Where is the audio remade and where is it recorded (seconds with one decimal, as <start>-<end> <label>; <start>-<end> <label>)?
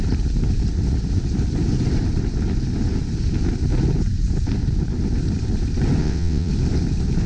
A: 0.0-6.0 recorded; 6.0-6.5 remade; 6.5-7.3 recorded